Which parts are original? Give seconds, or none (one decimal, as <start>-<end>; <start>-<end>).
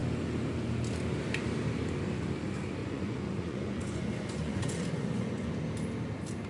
0.0-2.8; 5.5-6.5